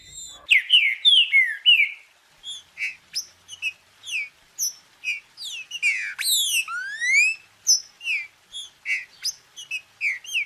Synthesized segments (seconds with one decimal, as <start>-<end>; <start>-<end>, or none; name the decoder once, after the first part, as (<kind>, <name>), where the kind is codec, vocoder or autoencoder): none